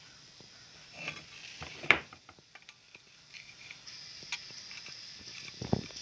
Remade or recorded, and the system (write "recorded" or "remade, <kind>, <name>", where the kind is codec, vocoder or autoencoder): remade, vocoder, BigVGAN v2